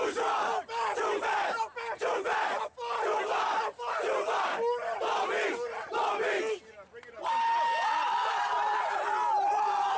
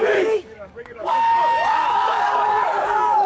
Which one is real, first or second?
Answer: first